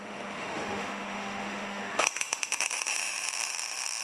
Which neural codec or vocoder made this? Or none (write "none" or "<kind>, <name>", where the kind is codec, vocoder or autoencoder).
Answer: autoencoder, DAC-VAE